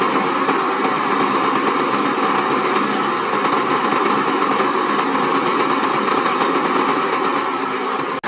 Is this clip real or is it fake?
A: real